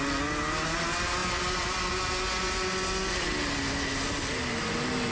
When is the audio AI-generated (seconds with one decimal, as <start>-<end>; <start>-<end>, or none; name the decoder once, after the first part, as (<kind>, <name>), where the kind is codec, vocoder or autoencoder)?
none